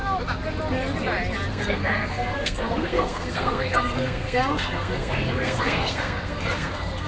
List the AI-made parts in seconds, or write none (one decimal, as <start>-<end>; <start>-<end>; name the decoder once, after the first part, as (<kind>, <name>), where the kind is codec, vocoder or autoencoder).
1.5-7.1 (codec, SNAC)